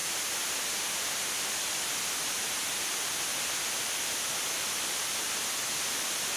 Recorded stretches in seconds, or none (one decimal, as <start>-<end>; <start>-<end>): 0.0-6.4